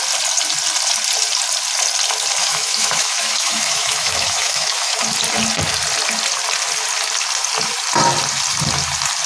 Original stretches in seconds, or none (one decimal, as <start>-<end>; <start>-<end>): 0.0-2.4; 5.0-9.3